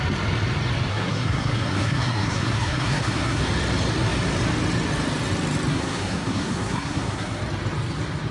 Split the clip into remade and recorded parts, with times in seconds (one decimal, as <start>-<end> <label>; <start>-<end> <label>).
0.0-0.9 recorded; 0.9-3.4 remade; 3.4-5.7 recorded; 5.7-7.4 remade; 7.4-8.3 recorded